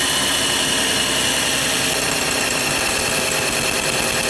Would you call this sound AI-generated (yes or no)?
no